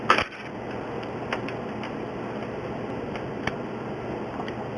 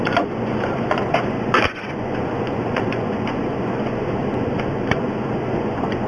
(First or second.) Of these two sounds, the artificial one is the second